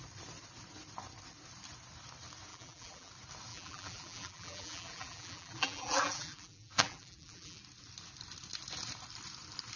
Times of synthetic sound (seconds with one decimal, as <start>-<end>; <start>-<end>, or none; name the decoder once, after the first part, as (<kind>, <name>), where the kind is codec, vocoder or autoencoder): 2.5-3.1 (vocoder, BigVGAN v2); 3.5-7.6